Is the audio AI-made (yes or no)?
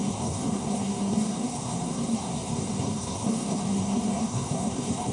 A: yes